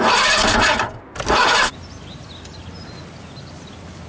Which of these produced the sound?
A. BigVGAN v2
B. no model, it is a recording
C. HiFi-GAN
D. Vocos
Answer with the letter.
B